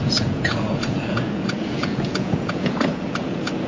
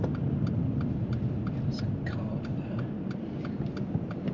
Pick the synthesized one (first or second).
first